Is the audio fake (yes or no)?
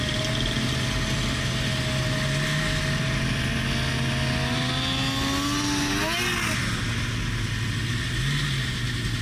no